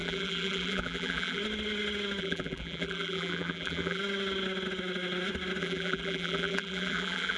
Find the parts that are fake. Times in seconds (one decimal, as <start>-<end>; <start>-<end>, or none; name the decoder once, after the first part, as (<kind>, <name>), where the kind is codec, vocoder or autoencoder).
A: 0.0-1.4 (vocoder, BigVGAN v2); 2.2-4.0; 5.6-7.4